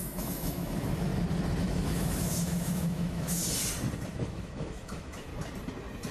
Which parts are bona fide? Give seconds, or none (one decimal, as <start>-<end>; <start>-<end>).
1.1-1.6; 3.4-4.1; 5.3-6.1